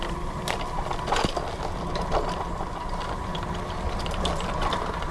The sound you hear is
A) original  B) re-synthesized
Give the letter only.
A